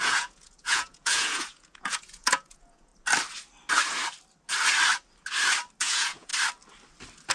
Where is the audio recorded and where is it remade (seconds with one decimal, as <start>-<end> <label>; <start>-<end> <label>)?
0.0-2.9 remade; 2.9-5.8 recorded; 5.8-6.3 remade; 6.3-7.3 recorded